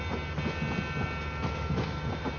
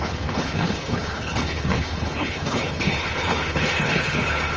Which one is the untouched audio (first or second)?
first